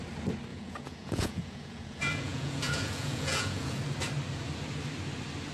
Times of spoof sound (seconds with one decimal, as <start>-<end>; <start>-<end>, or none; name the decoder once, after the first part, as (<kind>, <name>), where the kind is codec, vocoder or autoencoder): 0.5-3.8 (vocoder, Vocos)